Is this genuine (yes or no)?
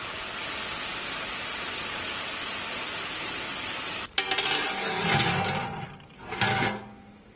yes